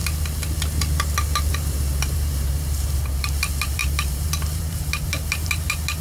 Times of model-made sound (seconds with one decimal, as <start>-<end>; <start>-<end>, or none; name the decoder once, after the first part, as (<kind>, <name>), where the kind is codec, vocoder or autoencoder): 1.5-6.0 (vocoder, BigVGAN v2)

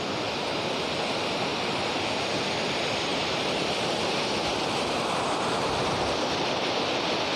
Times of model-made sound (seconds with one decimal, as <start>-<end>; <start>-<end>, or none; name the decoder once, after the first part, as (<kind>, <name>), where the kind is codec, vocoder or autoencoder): 3.1-5.9 (vocoder, BigVGAN v2)

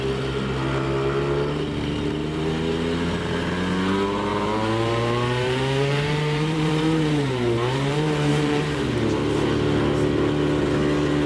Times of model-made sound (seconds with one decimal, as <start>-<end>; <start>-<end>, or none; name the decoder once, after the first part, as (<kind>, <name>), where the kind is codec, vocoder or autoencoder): 4.3-8.8 (vocoder, BigVGAN v2)

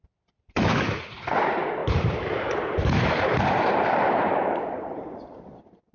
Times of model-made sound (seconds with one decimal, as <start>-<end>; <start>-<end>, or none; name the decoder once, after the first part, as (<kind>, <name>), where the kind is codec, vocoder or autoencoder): 0.0-5.9 (vocoder, BigVGAN v2)

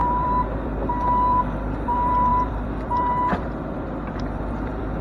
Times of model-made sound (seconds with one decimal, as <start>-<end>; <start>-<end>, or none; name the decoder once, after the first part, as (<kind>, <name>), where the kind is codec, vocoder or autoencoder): 0.0-5.0 (vocoder, BigVGAN v2)

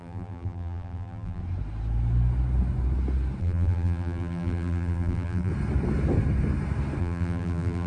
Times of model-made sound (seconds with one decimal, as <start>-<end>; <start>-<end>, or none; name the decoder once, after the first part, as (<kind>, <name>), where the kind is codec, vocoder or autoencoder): 0.0-1.4 (vocoder, BigVGAN v2); 3.4-5.5; 7.0-7.9

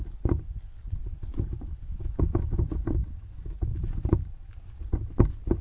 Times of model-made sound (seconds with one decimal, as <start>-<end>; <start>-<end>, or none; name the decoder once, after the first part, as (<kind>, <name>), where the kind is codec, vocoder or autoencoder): 1.0-2.6 (vocoder, BigVGAN v2); 3.7-4.8

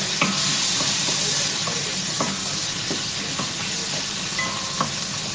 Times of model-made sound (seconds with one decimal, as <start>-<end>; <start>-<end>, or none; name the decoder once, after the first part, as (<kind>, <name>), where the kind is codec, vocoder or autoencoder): 0.0-2.4 (vocoder, BigVGAN v2); 3.3-3.8